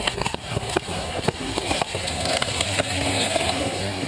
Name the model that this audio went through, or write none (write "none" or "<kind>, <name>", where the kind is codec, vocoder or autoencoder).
codec, SNAC